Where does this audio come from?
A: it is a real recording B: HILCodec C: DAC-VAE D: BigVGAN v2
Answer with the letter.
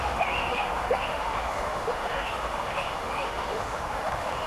C